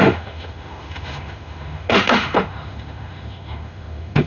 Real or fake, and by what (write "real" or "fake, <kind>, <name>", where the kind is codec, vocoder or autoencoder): fake, autoencoder, DAC-VAE